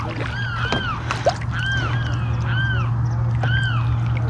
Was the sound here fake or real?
real